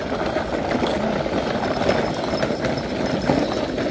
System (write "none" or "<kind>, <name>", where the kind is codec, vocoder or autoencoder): none